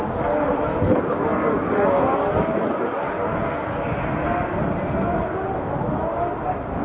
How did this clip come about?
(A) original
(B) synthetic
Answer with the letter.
A